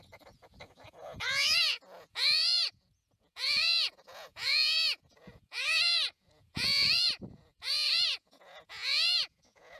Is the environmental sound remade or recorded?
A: remade